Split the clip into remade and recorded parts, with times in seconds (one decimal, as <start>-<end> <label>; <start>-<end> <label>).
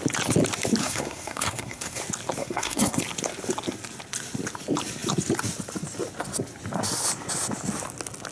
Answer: 0.0-0.8 recorded; 0.8-2.0 remade; 2.0-2.4 recorded; 2.4-3.0 remade; 3.0-8.3 recorded